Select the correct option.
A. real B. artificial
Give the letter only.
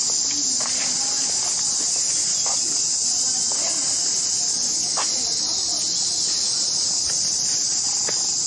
A